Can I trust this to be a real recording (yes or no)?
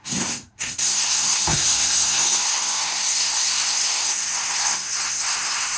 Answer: no